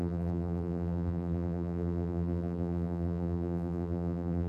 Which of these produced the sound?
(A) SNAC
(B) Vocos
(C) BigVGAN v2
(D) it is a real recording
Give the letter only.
C